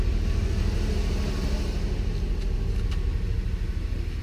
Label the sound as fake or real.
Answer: real